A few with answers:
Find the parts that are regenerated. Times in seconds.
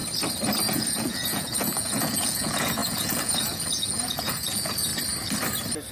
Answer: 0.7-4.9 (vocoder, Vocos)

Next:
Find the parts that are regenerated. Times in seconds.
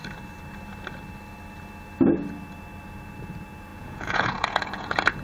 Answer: 3.7-5.2 (vocoder, Vocos)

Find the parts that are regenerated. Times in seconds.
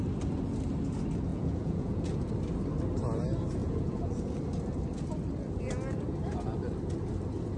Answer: 1.3-2.3 (vocoder, Vocos); 3.6-4.2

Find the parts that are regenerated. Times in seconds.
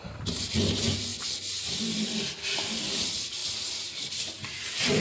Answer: none